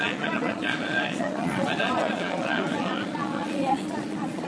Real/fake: fake